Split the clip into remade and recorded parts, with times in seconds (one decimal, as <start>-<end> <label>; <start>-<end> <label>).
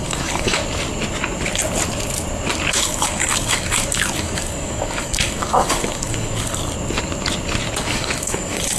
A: 0.0-0.6 remade; 0.6-2.7 recorded; 2.7-6.6 remade; 6.6-7.8 recorded; 7.8-8.8 remade